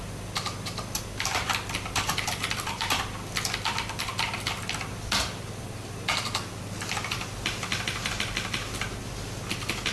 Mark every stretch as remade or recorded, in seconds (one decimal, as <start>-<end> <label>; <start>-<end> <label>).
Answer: 0.0-9.9 recorded